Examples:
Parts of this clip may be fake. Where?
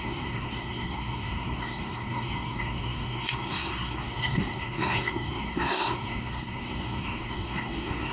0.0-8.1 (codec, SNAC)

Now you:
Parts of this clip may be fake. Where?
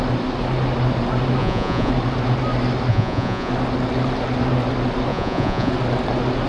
1.4-1.9 (vocoder, Vocos); 2.9-3.5; 5.1-5.7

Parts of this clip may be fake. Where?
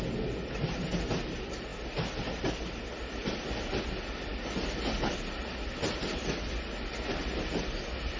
none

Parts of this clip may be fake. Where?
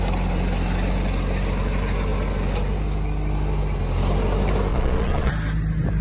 4.7-5.3 (vocoder, Vocos)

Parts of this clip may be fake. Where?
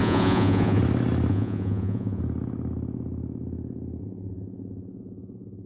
0.0-0.8 (vocoder, Vocos); 1.3-2.2; 4.0-5.7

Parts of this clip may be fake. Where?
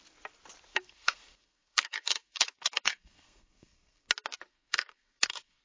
0.7-4.1 (codec, SNAC); 4.5-5.6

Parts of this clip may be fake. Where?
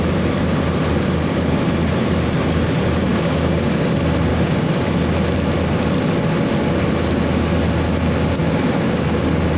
3.1-3.7 (codec, DAC); 4.3-4.9; 8.4-9.2